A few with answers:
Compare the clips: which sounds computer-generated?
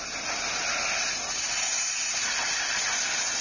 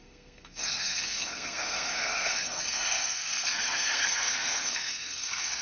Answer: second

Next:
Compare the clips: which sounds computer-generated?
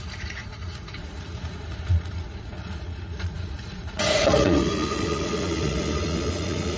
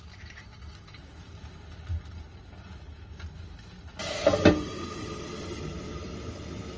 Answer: first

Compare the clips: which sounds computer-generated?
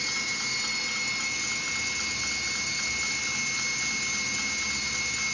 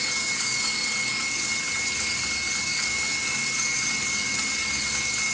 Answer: second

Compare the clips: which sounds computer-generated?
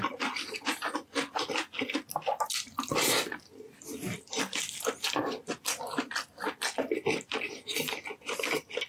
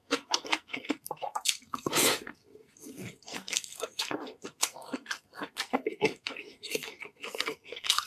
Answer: second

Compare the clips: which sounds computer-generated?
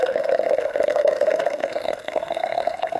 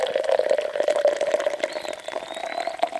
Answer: first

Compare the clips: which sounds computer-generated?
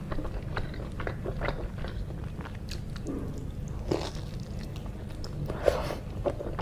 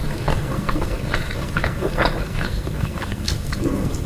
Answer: second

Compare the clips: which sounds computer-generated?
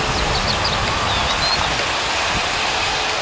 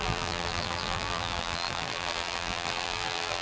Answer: second